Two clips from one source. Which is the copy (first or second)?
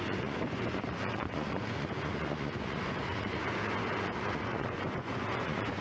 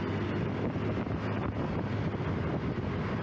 first